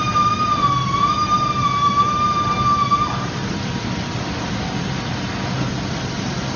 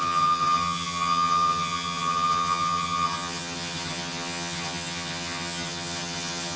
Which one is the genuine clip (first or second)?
first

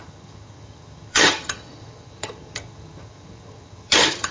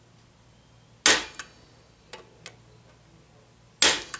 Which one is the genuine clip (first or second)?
second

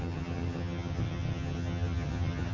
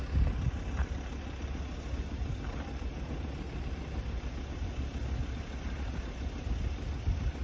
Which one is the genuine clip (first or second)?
second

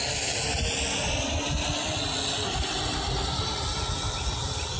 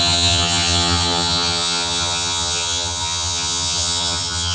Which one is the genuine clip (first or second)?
first